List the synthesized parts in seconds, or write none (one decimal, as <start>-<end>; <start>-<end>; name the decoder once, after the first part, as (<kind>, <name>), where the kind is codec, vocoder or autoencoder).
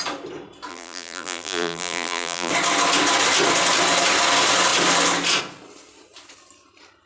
0.7-2.5 (vocoder, BigVGAN v2)